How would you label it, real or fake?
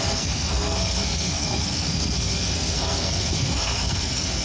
fake